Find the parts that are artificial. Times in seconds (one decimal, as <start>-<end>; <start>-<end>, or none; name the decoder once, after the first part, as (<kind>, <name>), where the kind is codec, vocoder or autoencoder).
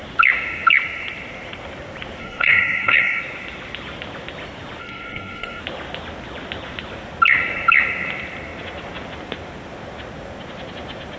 2.2-3.2 (codec, SNAC); 4.8-5.6